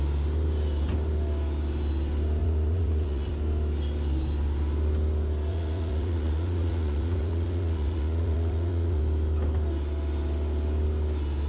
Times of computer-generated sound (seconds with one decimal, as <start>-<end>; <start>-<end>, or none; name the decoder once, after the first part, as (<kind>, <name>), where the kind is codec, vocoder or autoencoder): 2.4-3.3 (vocoder, Vocos); 5.5-9.0